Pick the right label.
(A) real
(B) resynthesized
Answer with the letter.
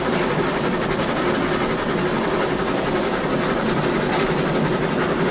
A